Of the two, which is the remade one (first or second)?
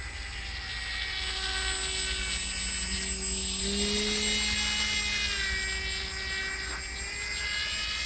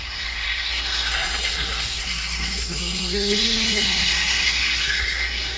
second